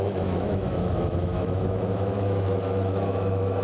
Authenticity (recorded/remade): remade